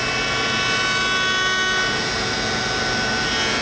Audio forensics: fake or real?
real